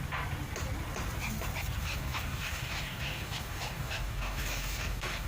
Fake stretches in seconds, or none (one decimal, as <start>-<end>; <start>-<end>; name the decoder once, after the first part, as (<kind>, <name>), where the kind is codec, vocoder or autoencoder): 1.8-5.3 (codec, DAC)